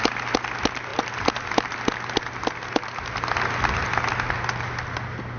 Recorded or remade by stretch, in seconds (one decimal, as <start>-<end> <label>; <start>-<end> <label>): 0.0-5.4 recorded